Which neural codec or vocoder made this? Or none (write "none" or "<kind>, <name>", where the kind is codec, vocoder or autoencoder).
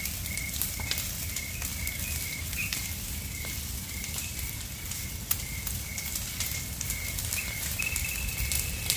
none